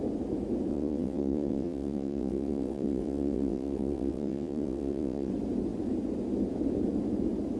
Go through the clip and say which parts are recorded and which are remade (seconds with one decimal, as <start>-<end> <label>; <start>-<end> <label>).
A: 0.0-0.7 recorded; 0.7-5.3 remade; 5.3-7.6 recorded